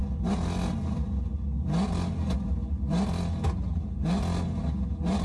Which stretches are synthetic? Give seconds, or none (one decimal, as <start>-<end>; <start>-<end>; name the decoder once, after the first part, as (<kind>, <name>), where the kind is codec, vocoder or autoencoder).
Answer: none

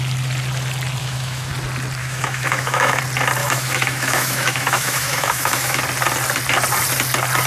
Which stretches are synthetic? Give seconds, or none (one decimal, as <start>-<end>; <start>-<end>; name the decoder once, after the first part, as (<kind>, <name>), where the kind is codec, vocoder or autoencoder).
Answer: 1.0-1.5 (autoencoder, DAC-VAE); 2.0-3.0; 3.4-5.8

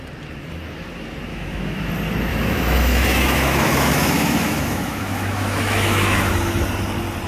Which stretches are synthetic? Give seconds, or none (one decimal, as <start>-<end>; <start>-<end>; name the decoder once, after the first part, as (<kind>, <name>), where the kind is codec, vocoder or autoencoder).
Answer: 1.3-1.9 (autoencoder, DAC-VAE); 2.3-6.3